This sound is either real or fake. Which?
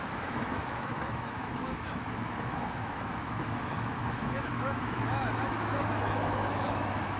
fake